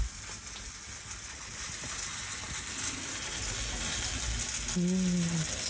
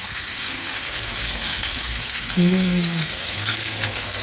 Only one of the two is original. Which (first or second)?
first